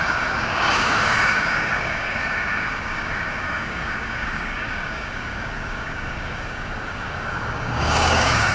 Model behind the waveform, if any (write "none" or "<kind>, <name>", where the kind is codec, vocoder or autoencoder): codec, DAC